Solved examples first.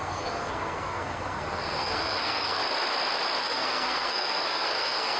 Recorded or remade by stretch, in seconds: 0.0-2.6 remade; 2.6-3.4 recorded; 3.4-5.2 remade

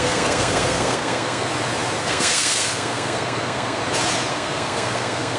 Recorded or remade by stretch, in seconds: 0.0-1.5 remade; 1.5-2.0 recorded; 2.0-3.8 remade; 3.8-4.3 recorded; 4.3-5.4 remade

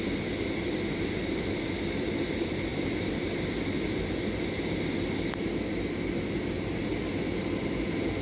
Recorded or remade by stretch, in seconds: 0.0-8.2 recorded

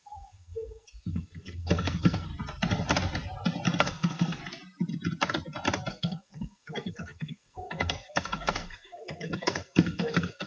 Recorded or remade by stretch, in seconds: 0.0-2.3 remade; 2.3-3.8 recorded; 3.8-4.4 remade; 4.4-5.9 recorded; 5.9-10.5 remade

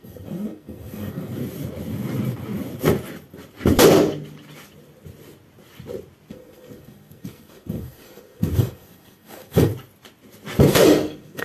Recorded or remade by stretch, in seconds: 0.0-1.4 remade; 1.4-6.3 recorded; 6.3-9.7 remade; 9.7-10.6 recorded; 10.6-11.4 remade

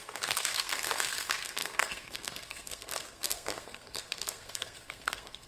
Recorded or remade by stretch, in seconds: 0.0-5.5 remade

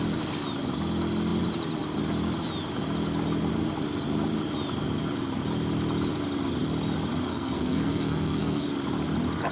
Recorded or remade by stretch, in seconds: 0.0-7.3 recorded; 7.3-8.6 remade; 8.6-9.5 recorded

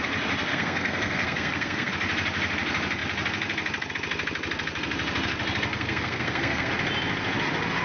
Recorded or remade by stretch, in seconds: 0.0-0.5 recorded; 0.5-1.9 remade; 1.9-5.7 recorded; 5.7-6.7 remade; 6.7-7.8 recorded